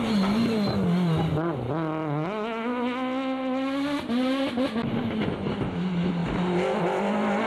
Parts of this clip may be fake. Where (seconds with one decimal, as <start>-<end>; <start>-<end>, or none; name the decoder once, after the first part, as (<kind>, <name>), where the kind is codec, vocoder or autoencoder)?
none